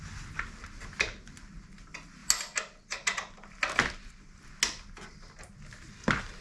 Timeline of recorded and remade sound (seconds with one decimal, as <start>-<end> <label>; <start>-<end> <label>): 0.0-6.4 recorded